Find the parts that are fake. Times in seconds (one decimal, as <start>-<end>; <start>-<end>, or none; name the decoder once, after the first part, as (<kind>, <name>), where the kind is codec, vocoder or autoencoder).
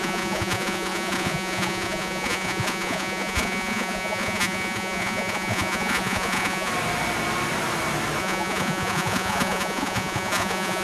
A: 0.0-6.7 (vocoder, Vocos); 8.2-10.8